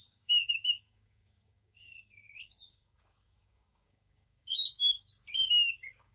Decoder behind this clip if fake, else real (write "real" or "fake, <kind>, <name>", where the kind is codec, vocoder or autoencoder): fake, codec, DAC